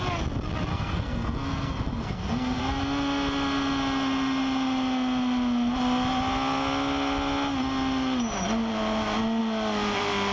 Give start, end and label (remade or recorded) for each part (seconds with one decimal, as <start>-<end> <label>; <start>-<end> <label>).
0.0-0.7 recorded; 0.7-2.6 remade; 2.6-10.3 recorded